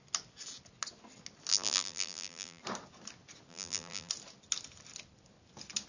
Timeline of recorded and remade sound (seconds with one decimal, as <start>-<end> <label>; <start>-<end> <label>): 0.0-1.5 recorded; 1.5-2.6 remade; 2.6-3.5 recorded; 3.5-4.1 remade; 4.1-5.9 recorded